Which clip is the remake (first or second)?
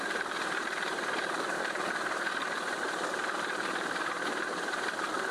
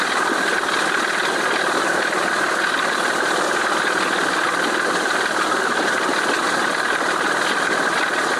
first